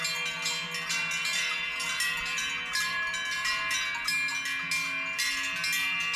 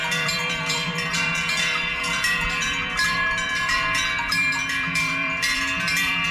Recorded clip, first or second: first